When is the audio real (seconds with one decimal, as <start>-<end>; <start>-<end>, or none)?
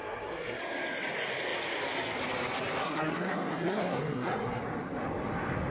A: 0.6-2.8; 4.6-5.7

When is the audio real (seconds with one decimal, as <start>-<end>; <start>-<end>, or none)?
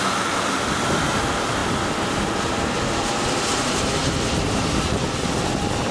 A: none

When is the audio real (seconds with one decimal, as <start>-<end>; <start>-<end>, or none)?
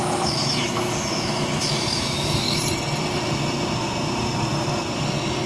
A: 2.6-5.5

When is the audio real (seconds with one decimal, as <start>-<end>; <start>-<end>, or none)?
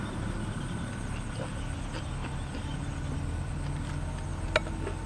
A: 0.0-5.1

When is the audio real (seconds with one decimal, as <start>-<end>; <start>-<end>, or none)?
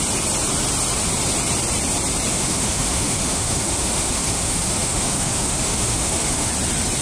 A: 0.0-2.3; 6.5-7.0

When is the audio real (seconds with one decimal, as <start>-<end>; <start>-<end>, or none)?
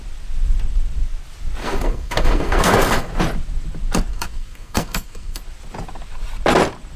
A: 0.0-1.6; 3.1-4.1; 5.4-7.0